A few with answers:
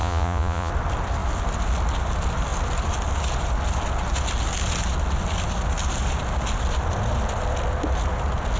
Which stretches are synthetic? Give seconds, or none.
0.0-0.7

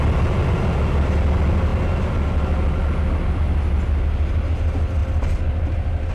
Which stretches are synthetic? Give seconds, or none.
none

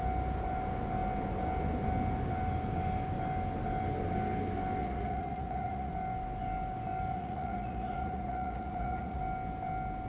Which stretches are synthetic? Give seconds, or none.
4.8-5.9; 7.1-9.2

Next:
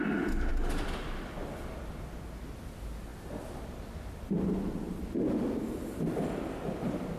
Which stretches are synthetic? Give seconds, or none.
none

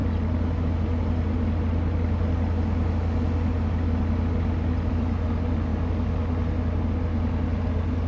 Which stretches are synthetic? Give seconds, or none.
none

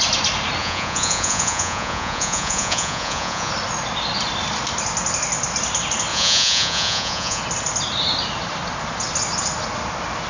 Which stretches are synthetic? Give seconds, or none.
0.6-3.5; 6.1-7.4